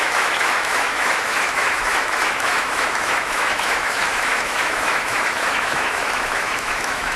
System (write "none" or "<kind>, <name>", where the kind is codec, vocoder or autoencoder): autoencoder, DAC-VAE